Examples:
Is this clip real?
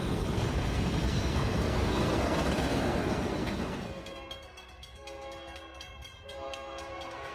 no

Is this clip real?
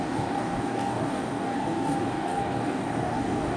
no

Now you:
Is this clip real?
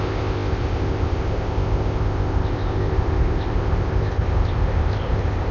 no